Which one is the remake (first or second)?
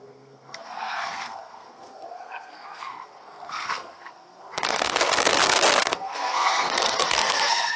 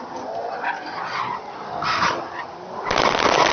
first